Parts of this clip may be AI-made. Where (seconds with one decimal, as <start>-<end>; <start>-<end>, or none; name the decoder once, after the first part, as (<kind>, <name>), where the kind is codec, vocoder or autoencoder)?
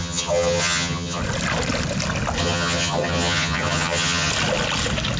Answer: 0.0-1.2 (vocoder, HiFi-GAN); 2.4-4.3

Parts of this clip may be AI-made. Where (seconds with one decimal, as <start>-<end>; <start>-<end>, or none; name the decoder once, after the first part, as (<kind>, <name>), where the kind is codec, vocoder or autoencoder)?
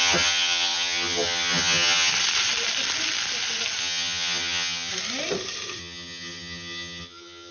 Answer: 0.0-2.1 (vocoder, HiFi-GAN); 3.8-4.9; 5.8-7.5